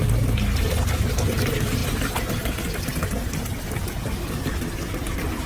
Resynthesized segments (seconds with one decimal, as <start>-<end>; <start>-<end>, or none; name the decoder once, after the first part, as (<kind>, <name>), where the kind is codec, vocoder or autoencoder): none